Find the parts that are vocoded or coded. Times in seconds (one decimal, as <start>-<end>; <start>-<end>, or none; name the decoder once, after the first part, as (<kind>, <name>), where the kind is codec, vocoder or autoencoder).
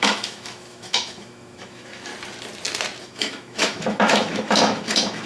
0.0-2.1 (autoencoder, DAC-VAE); 3.0-5.3